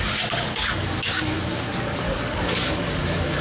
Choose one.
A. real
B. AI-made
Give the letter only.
B